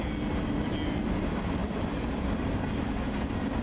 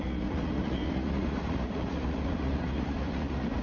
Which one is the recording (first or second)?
first